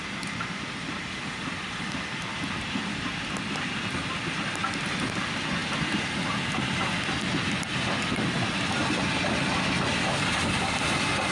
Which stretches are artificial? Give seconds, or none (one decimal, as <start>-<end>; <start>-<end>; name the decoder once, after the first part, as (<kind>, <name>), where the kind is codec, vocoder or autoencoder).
none